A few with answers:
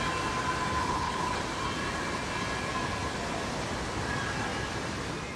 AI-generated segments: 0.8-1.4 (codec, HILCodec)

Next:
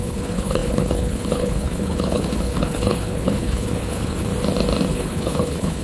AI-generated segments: 0.0-4.3 (codec, HILCodec); 4.9-5.8

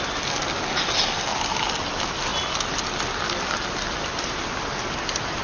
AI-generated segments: none

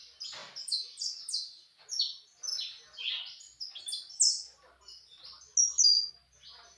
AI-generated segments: none

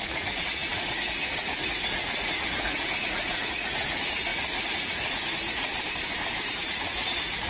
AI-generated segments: 0.0-5.7 (vocoder, Vocos); 6.4-7.5

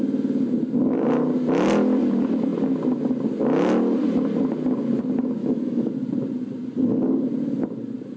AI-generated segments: 5.4-5.9 (autoencoder, DAC-VAE)

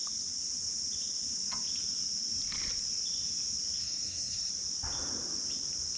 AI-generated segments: 3.8-4.5 (codec, SNAC)

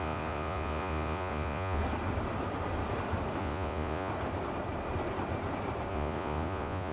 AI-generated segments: 0.0-1.8 (vocoder, Vocos); 3.4-4.1; 5.9-6.9